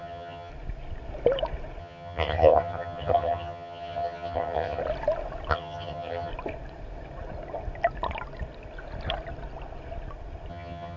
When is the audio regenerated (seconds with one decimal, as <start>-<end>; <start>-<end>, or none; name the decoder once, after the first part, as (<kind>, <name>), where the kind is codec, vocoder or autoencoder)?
0.0-0.5 (vocoder, HiFi-GAN); 1.8-4.8; 5.5-6.3; 10.5-11.0